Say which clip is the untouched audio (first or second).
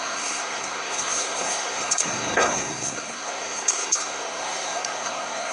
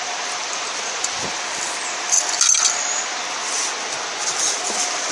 second